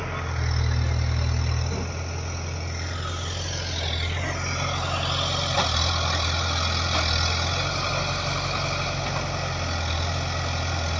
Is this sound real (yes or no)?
yes